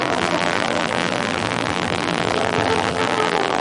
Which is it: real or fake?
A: fake